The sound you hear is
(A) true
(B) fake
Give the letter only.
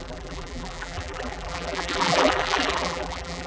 B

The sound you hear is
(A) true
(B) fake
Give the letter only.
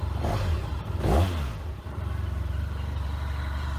A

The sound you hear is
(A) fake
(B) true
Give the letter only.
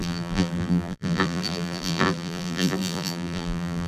A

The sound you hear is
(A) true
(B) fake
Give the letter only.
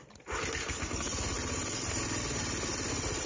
B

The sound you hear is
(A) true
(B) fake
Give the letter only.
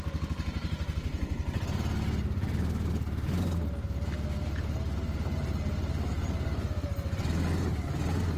A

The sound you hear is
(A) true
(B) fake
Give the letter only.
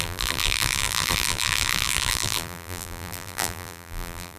B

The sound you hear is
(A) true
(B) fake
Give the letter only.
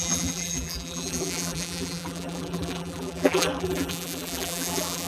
B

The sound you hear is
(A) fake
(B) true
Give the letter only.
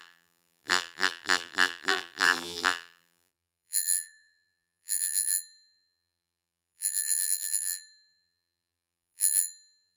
A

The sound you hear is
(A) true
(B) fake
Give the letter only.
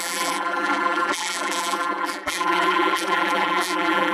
B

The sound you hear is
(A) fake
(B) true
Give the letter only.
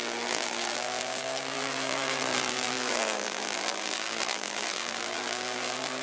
A